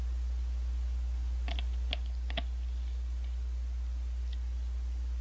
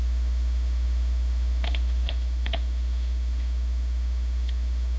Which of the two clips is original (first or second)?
first